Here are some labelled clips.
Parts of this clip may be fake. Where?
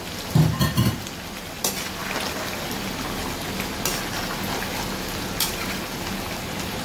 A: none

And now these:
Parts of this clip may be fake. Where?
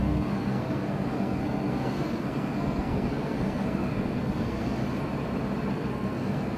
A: 0.0-4.8 (codec, SNAC); 5.7-6.6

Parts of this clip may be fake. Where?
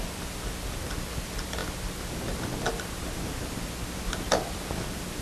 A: none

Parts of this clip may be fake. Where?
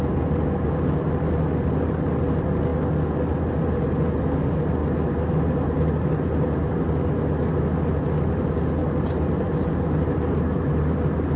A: none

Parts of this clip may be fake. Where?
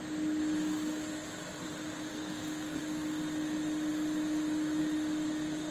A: 2.1-2.8 (codec, SNAC)